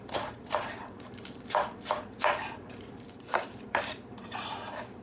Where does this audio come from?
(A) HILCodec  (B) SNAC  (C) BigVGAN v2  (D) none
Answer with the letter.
C